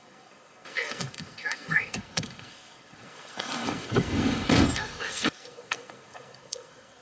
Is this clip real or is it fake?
fake